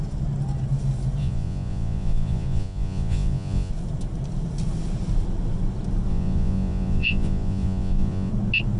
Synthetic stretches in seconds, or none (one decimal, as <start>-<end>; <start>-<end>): 1.2-3.7; 6.1-8.3

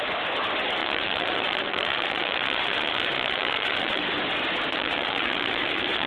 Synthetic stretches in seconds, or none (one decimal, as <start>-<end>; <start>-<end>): 0.8-4.0; 4.7-6.1

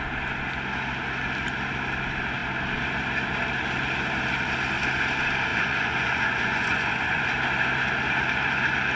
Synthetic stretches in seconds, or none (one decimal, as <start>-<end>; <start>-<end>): 5.5-7.3

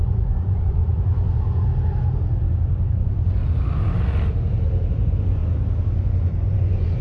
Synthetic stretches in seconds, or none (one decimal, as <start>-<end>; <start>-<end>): 0.0-0.8; 2.9-3.4; 4.9-5.4; 6.0-7.0